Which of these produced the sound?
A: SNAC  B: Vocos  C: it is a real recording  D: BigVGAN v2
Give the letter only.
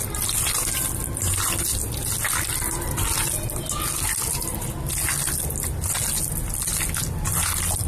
C